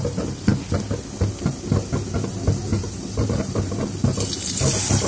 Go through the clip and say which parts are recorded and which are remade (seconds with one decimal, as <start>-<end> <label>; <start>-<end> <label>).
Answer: 0.0-2.7 recorded; 2.7-3.7 remade; 3.7-5.1 recorded